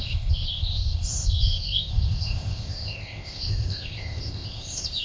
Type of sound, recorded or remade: remade